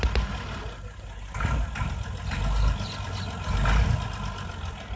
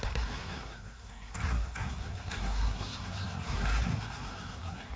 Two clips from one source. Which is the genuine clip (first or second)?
first